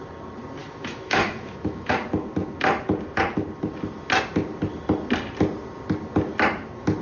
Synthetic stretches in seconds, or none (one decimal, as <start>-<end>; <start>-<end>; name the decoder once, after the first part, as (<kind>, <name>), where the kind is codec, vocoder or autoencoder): 0.6-1.9 (autoencoder, DAC-VAE)